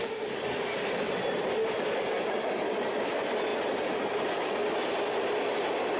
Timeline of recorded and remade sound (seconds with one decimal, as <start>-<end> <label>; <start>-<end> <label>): 0.0-6.0 recorded